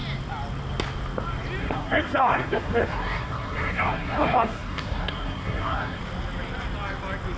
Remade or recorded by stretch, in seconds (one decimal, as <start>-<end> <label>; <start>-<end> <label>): 0.0-1.6 recorded; 1.6-6.0 remade; 6.0-7.4 recorded